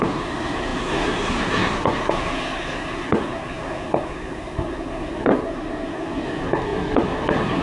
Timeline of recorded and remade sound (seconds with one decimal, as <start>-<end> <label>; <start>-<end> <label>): 0.0-7.6 remade